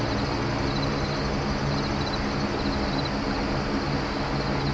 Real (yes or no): yes